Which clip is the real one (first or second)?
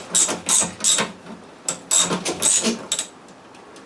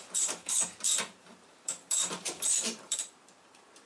first